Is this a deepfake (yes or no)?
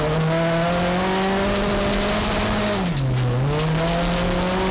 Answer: no